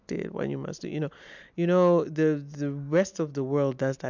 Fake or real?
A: real